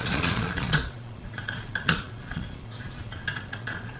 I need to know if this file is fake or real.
fake